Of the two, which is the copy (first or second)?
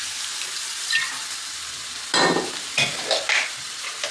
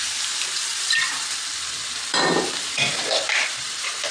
second